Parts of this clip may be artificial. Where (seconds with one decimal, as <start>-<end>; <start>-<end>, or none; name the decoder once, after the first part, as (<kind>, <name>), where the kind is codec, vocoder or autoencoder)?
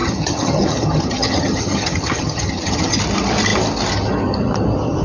0.0-3.0 (vocoder, HiFi-GAN)